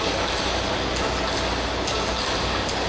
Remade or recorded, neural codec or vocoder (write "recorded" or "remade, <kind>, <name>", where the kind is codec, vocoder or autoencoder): recorded